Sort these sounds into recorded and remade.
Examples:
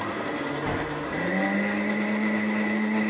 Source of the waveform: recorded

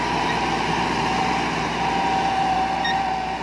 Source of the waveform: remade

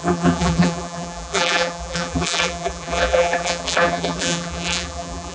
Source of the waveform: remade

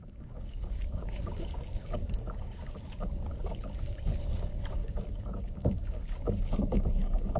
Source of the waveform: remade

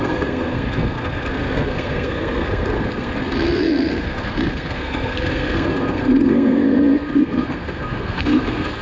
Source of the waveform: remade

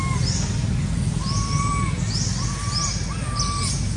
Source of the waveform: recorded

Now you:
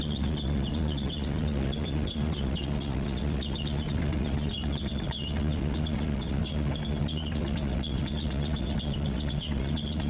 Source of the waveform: remade